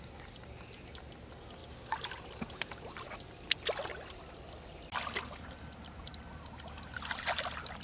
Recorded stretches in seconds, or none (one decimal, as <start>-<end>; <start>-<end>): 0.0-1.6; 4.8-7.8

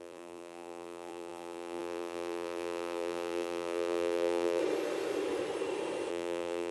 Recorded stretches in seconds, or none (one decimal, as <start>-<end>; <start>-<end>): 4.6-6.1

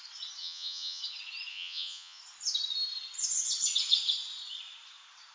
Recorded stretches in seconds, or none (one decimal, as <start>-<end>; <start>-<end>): 0.0-0.4; 1.0-1.5; 2.2-5.3